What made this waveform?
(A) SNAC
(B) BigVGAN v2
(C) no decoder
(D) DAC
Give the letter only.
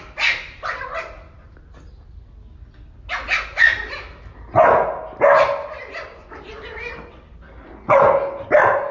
C